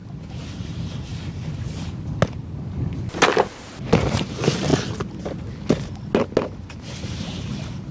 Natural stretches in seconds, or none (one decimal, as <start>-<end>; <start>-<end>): 0.0-0.5; 1.1-4.1; 4.7-6.8